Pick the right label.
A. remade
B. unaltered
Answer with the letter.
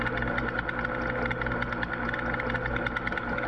B